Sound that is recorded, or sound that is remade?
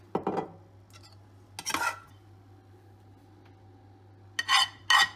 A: recorded